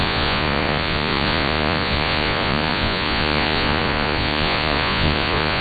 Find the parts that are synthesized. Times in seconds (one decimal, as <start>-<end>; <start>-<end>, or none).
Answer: 0.0-5.6